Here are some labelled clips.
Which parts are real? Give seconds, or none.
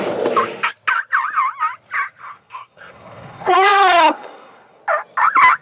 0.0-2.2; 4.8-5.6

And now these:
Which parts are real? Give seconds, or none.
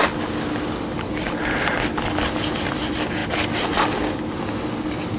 0.0-5.2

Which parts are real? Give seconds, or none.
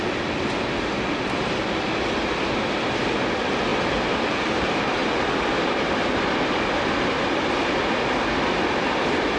0.0-9.4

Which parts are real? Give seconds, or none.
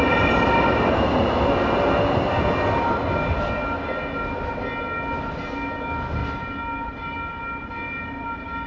0.0-6.2; 7.4-8.7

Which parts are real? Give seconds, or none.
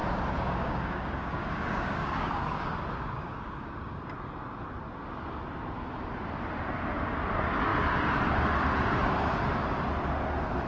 4.1-10.7